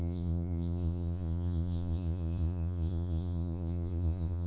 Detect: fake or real fake